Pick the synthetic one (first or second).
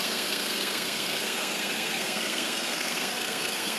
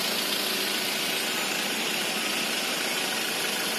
first